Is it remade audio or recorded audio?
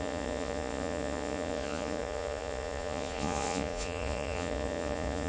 remade